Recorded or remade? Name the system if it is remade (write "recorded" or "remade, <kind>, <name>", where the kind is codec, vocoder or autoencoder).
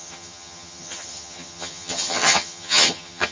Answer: remade, vocoder, HiFi-GAN